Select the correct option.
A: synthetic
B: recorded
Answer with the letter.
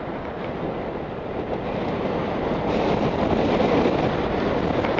B